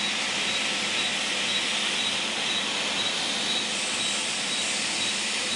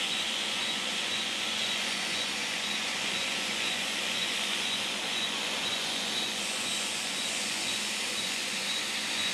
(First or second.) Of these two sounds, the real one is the first